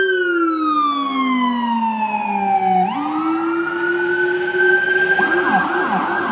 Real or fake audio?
real